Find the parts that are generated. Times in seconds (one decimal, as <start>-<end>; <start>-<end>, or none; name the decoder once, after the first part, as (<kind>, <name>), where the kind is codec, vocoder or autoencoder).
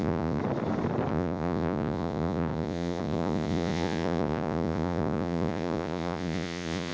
0.0-0.4 (vocoder, Vocos); 1.1-6.9